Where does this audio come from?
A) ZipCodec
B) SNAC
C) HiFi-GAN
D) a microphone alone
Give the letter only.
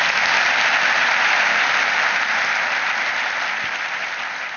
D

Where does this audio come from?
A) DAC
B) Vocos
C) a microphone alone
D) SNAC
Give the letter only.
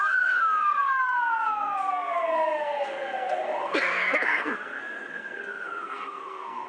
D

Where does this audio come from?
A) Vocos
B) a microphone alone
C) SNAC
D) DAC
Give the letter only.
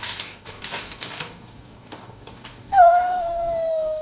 D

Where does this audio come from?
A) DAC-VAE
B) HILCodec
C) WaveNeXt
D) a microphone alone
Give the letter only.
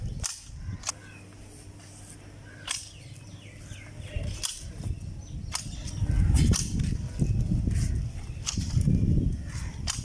D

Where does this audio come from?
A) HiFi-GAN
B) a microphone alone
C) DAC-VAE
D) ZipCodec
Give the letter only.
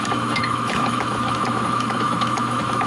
C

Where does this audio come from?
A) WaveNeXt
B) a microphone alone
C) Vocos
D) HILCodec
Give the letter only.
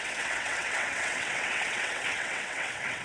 A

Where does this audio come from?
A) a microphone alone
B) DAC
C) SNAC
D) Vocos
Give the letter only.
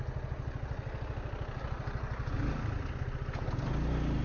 A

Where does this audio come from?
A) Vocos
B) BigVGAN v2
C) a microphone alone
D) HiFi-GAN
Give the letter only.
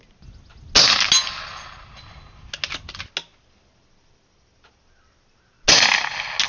C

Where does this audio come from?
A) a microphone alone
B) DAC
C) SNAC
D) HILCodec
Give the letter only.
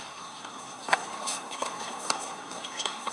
C